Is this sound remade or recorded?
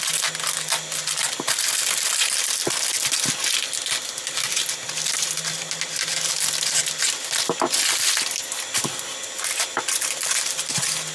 recorded